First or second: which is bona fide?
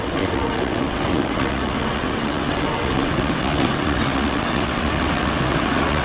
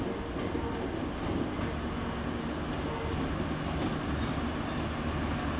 second